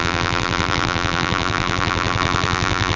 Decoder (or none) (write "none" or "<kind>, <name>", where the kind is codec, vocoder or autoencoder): vocoder, BigVGAN v2